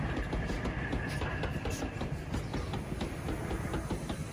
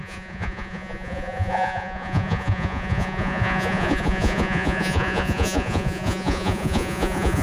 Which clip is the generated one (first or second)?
second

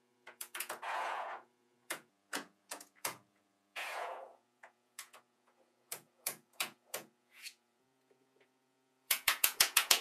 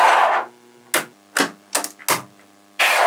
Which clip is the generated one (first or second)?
first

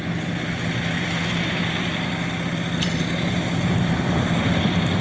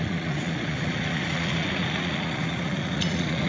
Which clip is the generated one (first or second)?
second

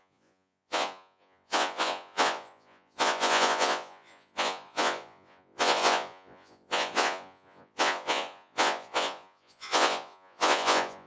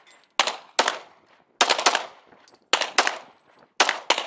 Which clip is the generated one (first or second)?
first